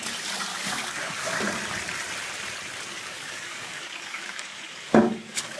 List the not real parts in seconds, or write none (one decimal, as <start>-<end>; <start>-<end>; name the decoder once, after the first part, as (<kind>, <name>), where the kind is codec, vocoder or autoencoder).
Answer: 0.5-1.4 (codec, DAC); 2.9-5.6